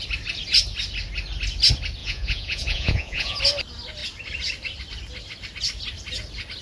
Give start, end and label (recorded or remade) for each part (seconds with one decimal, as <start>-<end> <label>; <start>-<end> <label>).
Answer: 0.0-2.0 recorded; 2.0-3.4 remade; 3.4-6.6 recorded